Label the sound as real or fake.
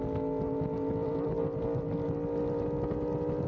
real